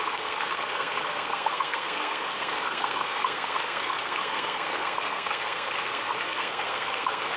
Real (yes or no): no